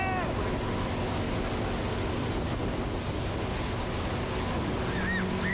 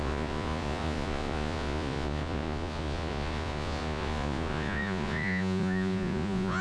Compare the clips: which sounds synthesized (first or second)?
second